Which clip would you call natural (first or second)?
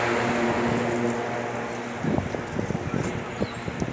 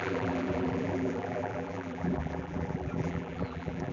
first